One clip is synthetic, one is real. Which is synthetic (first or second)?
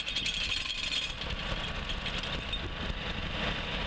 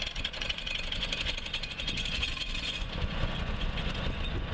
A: second